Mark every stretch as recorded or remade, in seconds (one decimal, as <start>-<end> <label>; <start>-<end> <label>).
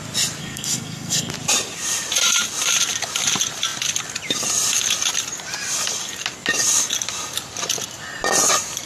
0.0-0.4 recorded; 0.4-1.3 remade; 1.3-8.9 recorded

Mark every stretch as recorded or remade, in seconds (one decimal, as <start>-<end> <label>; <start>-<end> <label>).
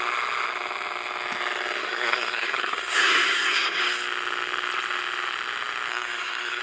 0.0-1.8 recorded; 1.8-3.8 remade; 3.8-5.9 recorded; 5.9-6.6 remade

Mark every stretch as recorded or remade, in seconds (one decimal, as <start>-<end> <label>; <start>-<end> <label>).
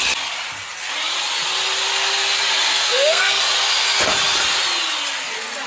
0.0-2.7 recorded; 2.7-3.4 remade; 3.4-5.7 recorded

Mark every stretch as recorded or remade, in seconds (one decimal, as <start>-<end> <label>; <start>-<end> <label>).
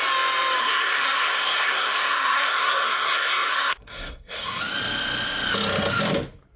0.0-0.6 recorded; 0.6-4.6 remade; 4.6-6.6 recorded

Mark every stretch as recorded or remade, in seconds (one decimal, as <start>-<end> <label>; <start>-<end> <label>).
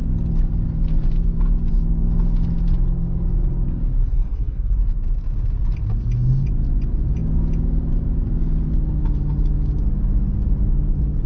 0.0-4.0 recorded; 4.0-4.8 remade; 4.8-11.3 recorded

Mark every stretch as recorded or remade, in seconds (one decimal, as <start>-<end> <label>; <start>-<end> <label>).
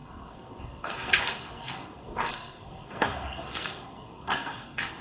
0.0-5.0 remade